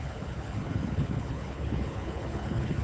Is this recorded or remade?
remade